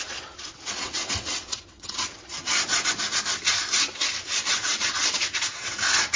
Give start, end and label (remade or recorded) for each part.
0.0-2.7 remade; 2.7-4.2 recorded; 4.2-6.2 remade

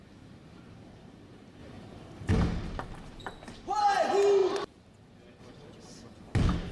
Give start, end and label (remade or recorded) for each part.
0.0-6.7 recorded

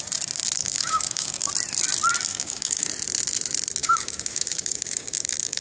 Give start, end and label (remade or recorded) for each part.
0.0-0.6 recorded; 0.6-1.5 remade; 1.5-2.3 recorded; 2.3-2.9 remade; 2.9-3.8 recorded; 3.8-5.6 remade

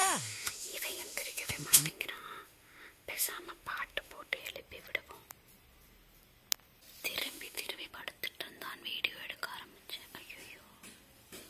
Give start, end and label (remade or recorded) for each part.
0.0-4.4 remade; 4.4-7.2 recorded; 7.2-7.9 remade; 7.9-11.5 recorded

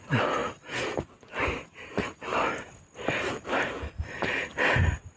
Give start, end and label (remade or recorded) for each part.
0.0-5.2 recorded

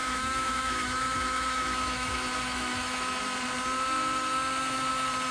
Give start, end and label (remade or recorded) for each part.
0.0-3.2 remade; 3.2-5.3 recorded